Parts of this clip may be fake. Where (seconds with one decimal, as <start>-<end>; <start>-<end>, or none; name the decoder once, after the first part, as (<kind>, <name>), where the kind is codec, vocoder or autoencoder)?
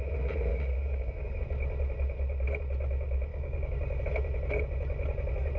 0.5-1.4 (codec, DAC); 3.3-4.0